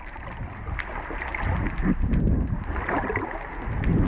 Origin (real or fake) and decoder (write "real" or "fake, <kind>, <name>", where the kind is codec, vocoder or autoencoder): real